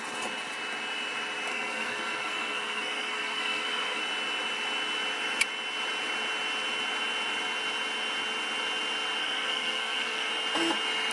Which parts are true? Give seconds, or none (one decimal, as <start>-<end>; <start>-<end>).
0.0-1.5; 4.0-9.2; 10.3-11.1